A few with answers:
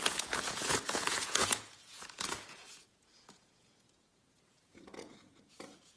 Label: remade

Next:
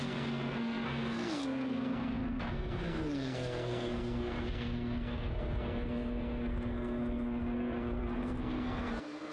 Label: remade